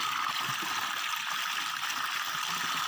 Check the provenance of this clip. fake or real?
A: real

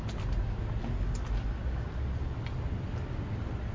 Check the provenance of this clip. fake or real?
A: real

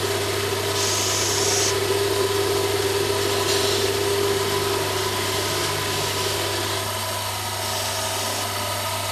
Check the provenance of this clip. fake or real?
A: real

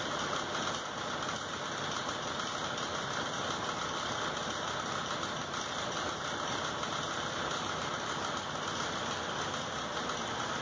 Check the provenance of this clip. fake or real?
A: real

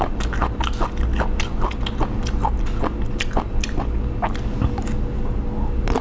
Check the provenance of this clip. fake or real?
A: real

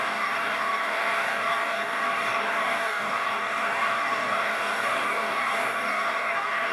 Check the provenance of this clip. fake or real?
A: fake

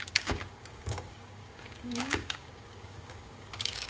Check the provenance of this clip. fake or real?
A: fake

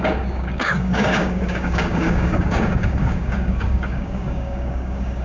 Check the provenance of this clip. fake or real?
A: fake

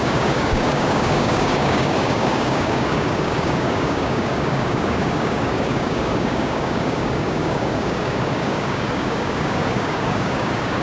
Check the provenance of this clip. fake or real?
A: fake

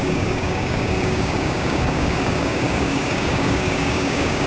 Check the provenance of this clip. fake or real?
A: fake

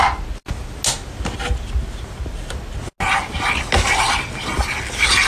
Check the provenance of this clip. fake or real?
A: real